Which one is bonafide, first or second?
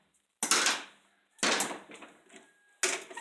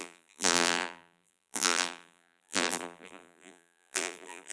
first